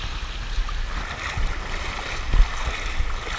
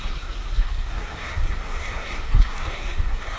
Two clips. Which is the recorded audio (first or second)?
first